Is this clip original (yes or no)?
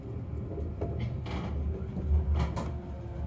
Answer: yes